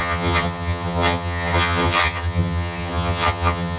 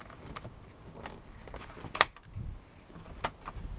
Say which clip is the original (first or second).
second